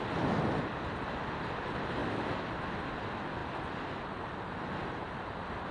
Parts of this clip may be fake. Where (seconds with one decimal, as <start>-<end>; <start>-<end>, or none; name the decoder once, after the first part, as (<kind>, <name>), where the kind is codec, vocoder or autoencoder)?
none